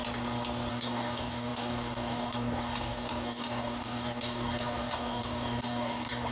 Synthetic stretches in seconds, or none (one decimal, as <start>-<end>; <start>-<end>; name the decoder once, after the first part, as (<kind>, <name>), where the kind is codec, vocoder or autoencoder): 0.7-6.3 (codec, DAC)